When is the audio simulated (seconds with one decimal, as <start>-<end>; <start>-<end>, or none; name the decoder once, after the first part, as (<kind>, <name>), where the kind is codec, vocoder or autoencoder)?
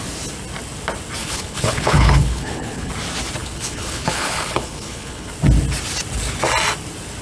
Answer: 1.2-2.9 (codec, HILCodec); 3.4-5.3